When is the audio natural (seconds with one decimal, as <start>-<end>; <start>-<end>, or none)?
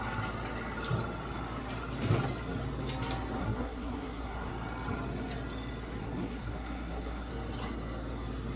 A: 0.0-3.4; 4.5-6.0; 7.3-8.6